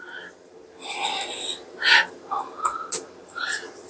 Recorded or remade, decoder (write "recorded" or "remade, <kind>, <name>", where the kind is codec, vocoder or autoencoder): recorded